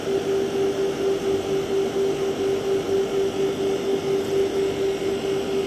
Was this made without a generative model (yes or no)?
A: yes